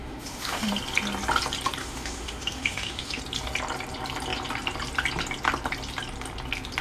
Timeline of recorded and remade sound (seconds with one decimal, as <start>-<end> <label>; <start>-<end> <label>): 0.0-0.7 remade; 0.7-1.8 recorded; 1.8-3.2 remade; 3.2-6.8 recorded